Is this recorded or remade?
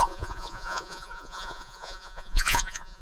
remade